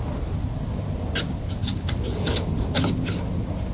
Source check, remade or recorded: recorded